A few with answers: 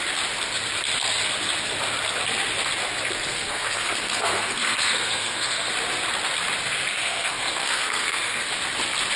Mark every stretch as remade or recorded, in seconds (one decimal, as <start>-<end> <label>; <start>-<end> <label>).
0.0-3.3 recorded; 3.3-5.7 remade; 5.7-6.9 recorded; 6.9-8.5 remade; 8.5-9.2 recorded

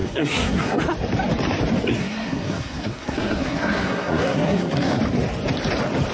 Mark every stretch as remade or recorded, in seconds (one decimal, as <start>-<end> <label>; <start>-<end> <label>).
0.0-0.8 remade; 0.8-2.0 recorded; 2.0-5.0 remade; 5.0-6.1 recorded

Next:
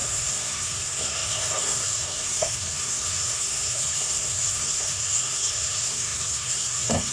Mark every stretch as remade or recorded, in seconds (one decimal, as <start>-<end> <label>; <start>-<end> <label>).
0.0-7.1 remade

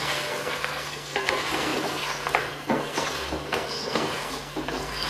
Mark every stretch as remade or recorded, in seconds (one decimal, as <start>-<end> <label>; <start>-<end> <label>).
0.0-5.1 remade